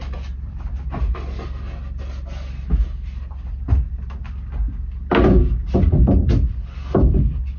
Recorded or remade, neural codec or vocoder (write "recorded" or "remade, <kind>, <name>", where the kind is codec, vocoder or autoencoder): recorded